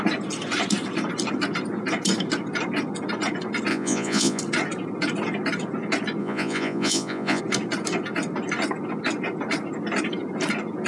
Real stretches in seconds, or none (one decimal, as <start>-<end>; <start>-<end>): 0.0-3.7; 4.4-6.2; 7.4-10.9